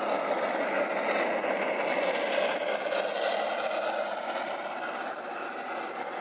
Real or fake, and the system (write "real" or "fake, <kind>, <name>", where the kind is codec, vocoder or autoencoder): real